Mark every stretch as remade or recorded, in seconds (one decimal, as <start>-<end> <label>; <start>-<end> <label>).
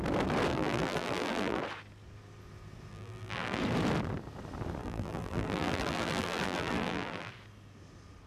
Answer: 0.0-0.5 recorded; 0.5-1.6 remade; 1.6-2.9 recorded; 2.9-3.6 remade; 3.6-4.8 recorded; 4.8-7.3 remade; 7.3-8.3 recorded